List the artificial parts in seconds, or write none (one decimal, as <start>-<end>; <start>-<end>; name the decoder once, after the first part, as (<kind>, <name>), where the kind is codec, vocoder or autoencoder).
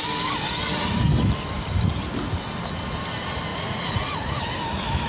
3.5-4.4 (vocoder, Vocos)